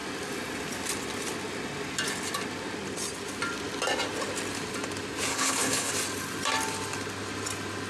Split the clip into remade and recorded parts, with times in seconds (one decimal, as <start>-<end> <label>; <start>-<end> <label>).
0.0-5.3 recorded; 5.3-5.9 remade; 5.9-7.9 recorded